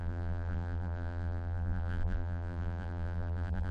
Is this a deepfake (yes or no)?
yes